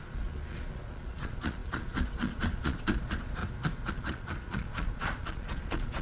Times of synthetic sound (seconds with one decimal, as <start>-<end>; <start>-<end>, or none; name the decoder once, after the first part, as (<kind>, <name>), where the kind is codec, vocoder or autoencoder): 0.0-3.4 (vocoder, Vocos); 3.9-6.0